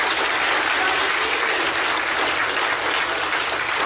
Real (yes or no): yes